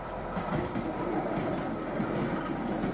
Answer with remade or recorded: recorded